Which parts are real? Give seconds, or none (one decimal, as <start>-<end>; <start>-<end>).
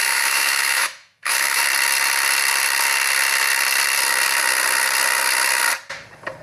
1.6-6.4